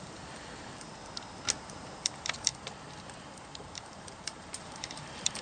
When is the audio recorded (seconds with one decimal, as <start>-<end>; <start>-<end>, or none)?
0.9-1.6

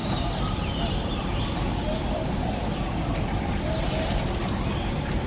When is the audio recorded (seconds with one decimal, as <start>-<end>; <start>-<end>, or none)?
0.7-5.3

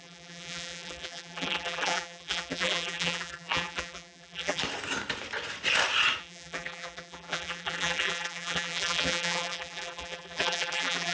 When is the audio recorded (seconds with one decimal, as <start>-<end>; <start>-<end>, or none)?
4.6-6.2

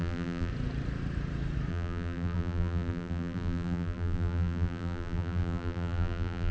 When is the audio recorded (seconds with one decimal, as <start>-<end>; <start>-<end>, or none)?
0.5-1.7

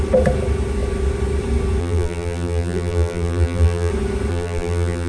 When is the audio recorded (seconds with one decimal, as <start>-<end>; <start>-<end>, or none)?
0.0-1.8; 3.9-4.3

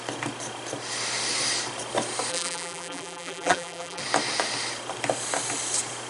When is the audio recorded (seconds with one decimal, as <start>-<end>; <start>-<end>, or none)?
0.0-2.3; 4.0-6.1

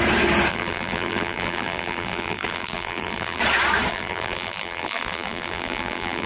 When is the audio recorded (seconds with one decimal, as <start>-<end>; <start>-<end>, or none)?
0.0-0.5; 3.4-3.9